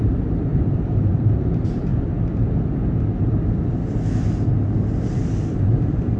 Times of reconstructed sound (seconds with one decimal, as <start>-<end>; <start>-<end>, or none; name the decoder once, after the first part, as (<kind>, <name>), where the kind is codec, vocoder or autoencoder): 0.0-1.9 (vocoder, BigVGAN v2); 5.6-6.2